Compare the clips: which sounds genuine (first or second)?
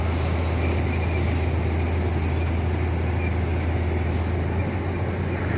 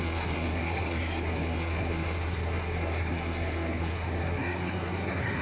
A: first